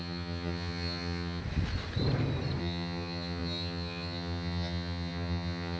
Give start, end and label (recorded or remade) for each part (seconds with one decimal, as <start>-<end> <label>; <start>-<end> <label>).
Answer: 0.0-1.4 remade; 1.4-2.6 recorded; 2.6-5.8 remade